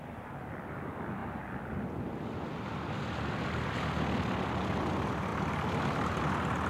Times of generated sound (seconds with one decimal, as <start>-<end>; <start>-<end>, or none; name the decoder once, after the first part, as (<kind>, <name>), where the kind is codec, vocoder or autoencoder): none